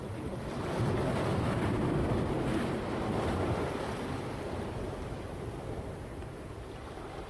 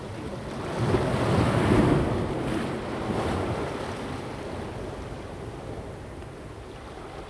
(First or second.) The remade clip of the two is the first